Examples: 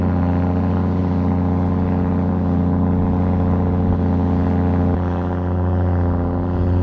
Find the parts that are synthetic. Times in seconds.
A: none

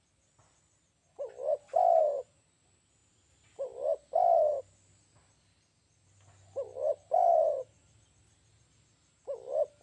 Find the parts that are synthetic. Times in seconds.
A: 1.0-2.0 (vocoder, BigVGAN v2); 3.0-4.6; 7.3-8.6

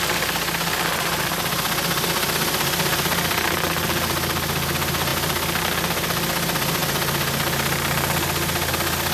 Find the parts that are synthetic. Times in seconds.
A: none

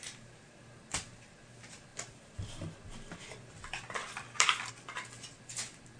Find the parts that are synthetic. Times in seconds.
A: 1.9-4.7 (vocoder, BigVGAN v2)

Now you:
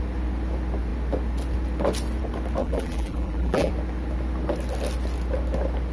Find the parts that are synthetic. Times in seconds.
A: 2.6-3.7 (vocoder, BigVGAN v2)

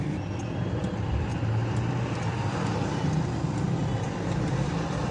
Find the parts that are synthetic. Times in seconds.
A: 0.0-1.3 (vocoder, BigVGAN v2); 4.3-5.1